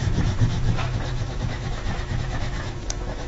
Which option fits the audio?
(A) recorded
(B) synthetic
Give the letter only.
B